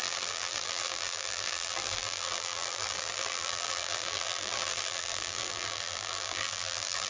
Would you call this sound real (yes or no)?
no